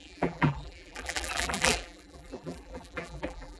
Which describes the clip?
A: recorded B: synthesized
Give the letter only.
B